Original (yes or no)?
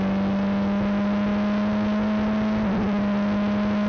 yes